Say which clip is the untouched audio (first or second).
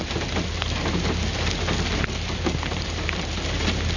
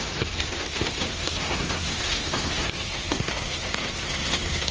first